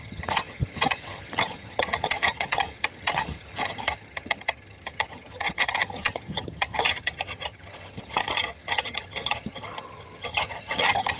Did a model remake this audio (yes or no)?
yes